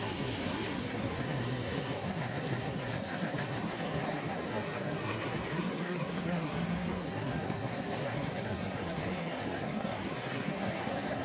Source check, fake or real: fake